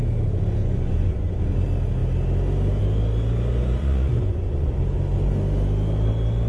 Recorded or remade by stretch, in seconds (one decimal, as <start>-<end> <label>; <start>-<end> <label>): 0.0-0.6 recorded; 0.6-1.4 remade; 1.4-3.8 recorded; 3.8-4.8 remade; 4.8-6.5 recorded